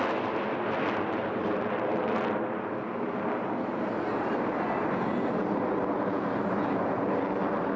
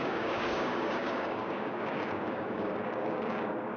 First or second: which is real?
first